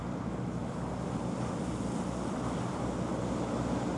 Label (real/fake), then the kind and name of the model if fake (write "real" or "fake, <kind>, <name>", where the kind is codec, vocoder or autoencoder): real